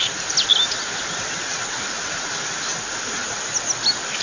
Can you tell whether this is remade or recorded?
recorded